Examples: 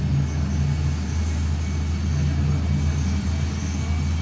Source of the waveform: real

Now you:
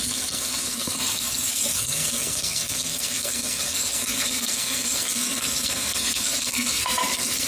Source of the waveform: fake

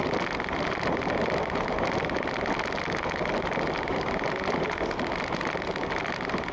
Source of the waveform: real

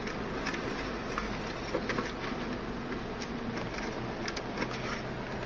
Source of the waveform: real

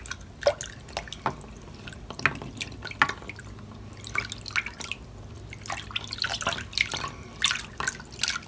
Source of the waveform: real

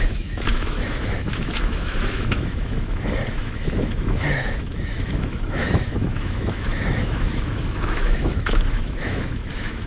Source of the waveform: fake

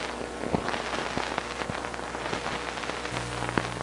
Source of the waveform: real